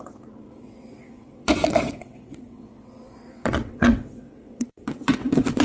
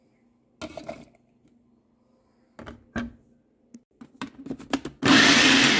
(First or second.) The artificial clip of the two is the first